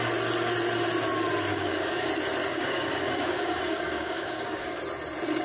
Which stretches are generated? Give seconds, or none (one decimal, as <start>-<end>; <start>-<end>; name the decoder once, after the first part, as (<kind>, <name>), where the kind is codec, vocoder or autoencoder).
1.5-2.1 (codec, DAC); 2.5-4.8